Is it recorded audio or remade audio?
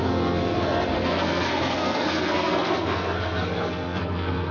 remade